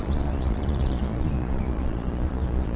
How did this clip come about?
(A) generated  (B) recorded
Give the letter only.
A